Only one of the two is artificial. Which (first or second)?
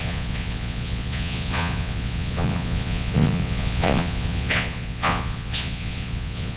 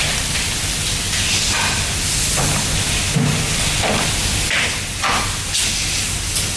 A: first